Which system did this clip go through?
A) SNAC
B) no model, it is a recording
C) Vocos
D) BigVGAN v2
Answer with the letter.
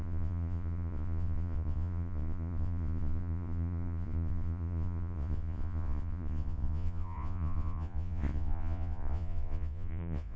C